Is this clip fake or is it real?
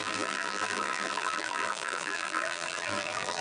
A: fake